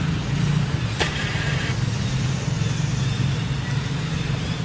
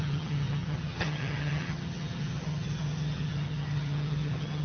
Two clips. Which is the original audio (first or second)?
first